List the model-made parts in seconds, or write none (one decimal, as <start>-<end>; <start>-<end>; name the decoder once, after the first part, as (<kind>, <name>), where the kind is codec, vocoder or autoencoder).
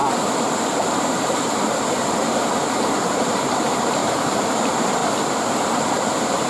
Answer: 1.0-4.0 (vocoder, BigVGAN v2); 4.6-5.0; 5.7-6.5